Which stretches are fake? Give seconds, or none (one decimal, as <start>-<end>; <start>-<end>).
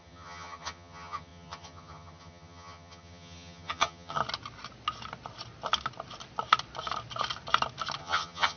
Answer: 0.0-4.2; 8.0-8.6